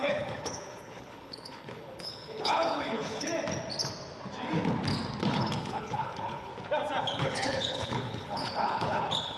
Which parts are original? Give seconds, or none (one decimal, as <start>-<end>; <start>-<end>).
3.3-5.3; 6.5-7.0